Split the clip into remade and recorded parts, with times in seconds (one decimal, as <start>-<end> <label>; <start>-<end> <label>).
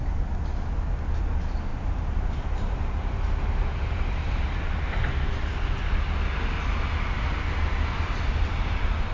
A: 0.0-1.7 recorded; 1.7-5.3 remade; 5.3-9.1 recorded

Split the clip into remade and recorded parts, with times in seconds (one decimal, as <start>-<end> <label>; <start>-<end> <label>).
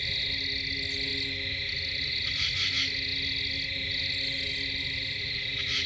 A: 0.0-5.9 recorded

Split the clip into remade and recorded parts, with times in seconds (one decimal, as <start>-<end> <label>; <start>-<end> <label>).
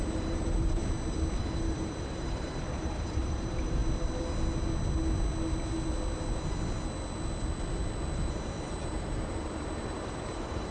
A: 0.0-0.8 remade; 0.8-1.4 recorded; 1.4-3.8 remade; 3.8-9.0 recorded; 9.0-10.7 remade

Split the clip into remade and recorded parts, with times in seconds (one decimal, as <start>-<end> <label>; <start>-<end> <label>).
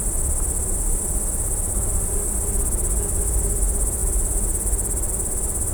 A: 0.0-5.7 recorded